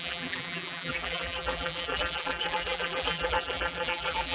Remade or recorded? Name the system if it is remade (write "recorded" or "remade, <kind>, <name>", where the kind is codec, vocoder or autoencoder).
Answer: remade, vocoder, BigVGAN v2